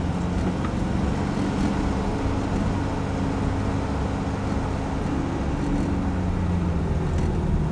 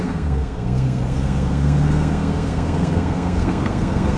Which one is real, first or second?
first